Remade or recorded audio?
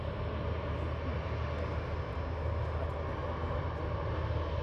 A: recorded